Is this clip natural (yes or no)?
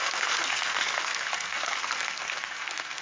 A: no